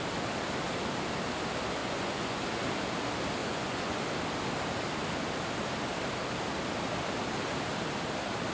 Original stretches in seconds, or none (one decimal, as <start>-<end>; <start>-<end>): 0.0-1.8; 2.4-3.4; 4.0-8.5